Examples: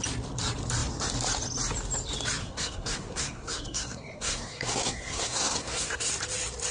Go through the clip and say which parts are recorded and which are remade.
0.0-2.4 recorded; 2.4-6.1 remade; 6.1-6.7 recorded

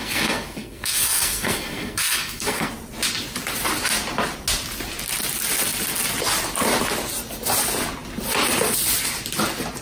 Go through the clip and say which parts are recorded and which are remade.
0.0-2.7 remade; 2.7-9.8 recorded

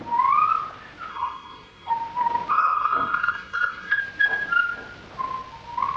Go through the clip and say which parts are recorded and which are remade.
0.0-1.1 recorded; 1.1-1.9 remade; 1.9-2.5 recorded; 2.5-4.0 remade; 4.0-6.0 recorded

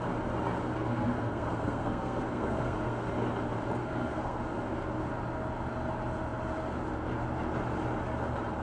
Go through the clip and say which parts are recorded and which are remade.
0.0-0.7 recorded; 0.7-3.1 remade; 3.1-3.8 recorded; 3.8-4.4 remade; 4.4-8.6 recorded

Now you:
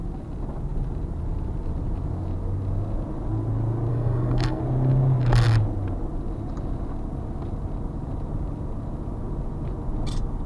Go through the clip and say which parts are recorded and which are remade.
0.0-3.9 recorded; 3.9-4.6 remade; 4.6-10.5 recorded